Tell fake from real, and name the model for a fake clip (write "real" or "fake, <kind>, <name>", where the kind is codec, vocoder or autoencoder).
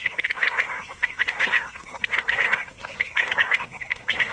fake, codec, SNAC